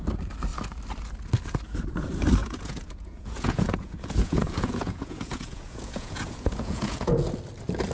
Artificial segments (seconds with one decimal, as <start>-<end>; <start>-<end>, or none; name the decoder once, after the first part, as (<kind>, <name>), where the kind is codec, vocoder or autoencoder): 2.4-7.1 (vocoder, Vocos)